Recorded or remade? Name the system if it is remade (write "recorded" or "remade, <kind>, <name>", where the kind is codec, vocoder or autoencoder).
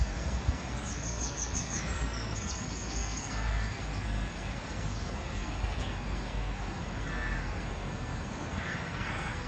remade, codec, SNAC